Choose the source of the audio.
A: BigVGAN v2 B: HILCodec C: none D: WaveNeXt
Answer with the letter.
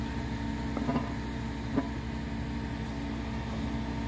C